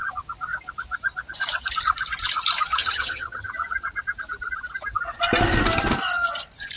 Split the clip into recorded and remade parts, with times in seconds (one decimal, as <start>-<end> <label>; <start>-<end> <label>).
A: 0.0-2.8 recorded; 2.8-3.5 remade; 3.5-6.8 recorded